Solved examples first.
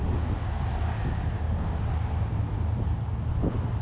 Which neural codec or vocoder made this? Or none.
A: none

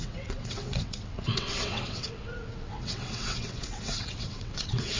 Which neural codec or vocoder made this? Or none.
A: vocoder, WaveNeXt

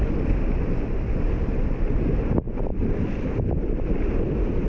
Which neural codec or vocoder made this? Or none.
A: none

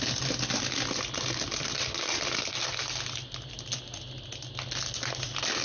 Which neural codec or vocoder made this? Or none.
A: none